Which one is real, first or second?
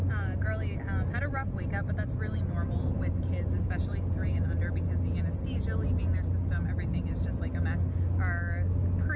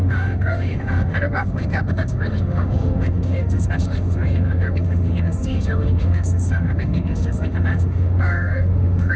first